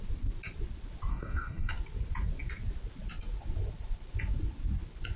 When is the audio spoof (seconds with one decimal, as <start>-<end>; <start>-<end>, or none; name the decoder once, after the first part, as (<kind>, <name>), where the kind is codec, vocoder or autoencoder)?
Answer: 1.1-1.7 (codec, SNAC)